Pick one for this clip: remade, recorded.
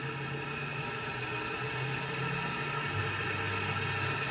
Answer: recorded